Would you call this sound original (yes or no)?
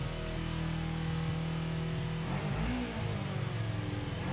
yes